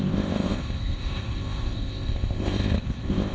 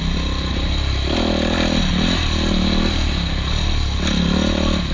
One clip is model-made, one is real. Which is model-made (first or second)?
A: first